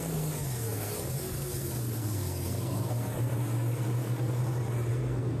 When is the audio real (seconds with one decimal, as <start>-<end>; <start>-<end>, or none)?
4.4-4.9